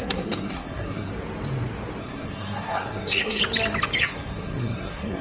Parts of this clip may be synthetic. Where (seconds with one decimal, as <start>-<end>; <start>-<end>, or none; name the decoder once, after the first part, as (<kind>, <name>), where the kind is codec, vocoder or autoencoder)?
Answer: 0.0-1.1 (codec, SNAC); 2.0-3.4; 4.0-5.2